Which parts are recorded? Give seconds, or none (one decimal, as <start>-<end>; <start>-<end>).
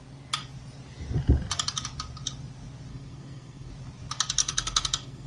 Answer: 0.0-2.9; 3.7-4.4